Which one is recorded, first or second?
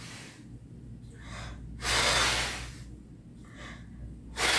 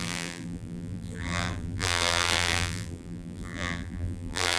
first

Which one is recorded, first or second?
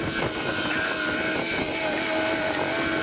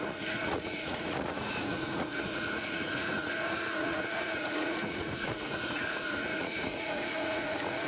first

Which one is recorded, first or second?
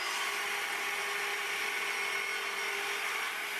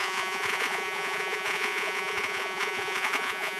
first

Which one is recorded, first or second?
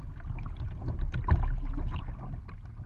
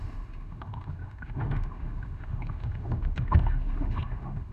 first